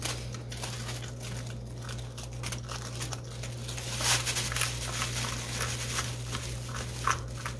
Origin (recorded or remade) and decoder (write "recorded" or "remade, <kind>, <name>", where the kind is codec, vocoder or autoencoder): recorded